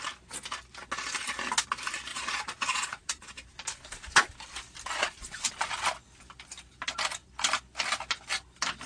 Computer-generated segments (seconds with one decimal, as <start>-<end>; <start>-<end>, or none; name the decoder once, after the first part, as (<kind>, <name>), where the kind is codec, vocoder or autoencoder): 2.1-3.3 (vocoder, Vocos)